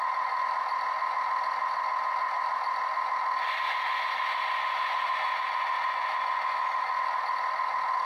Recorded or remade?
recorded